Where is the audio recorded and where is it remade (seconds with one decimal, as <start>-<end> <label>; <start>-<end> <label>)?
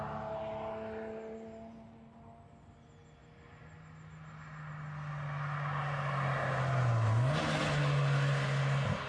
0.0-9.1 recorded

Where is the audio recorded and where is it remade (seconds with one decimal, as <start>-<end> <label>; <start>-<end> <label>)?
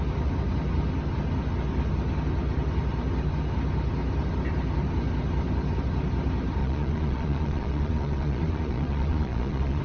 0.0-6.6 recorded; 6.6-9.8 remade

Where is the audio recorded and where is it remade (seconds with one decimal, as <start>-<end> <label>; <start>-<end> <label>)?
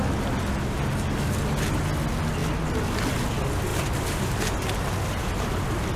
0.0-3.7 recorded; 3.7-5.5 remade; 5.5-6.0 recorded